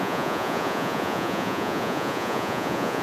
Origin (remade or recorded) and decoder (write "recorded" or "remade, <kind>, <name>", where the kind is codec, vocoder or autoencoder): remade, vocoder, Vocos